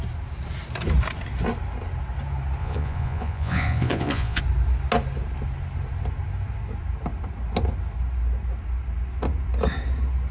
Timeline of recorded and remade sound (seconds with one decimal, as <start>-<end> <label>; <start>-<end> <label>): 0.0-2.6 recorded; 2.6-4.4 remade; 4.4-10.3 recorded